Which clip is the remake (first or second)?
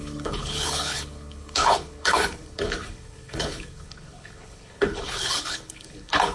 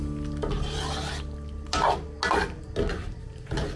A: first